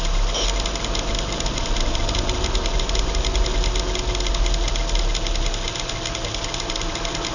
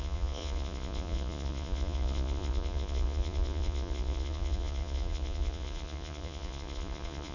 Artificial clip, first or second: second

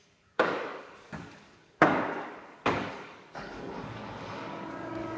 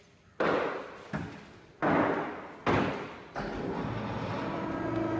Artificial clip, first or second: first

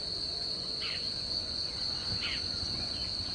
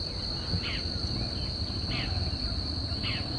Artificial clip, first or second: first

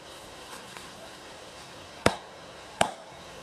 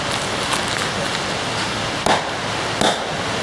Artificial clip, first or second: first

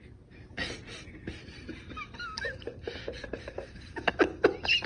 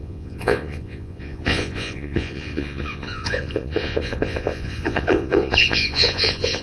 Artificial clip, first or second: second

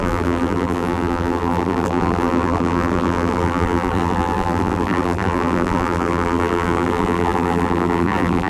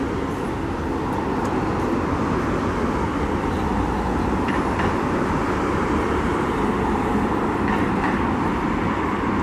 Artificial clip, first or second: first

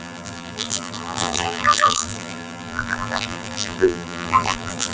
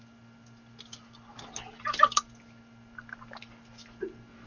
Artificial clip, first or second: first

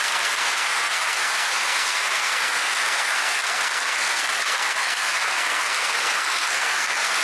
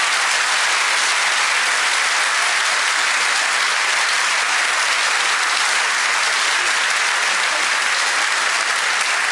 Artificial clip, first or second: first